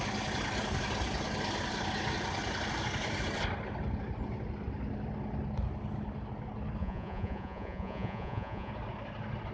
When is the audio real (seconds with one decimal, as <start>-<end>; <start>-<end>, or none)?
0.0-6.8; 8.7-9.5